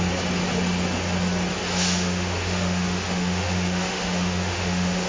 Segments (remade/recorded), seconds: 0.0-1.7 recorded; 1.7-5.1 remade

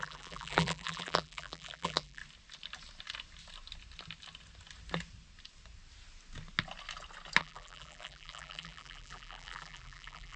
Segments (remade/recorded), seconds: 0.0-2.2 remade; 2.2-7.4 recorded; 7.4-10.4 remade